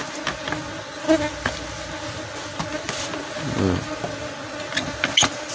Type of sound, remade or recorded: recorded